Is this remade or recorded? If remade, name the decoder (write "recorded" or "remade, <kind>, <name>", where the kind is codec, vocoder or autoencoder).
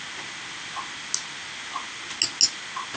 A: recorded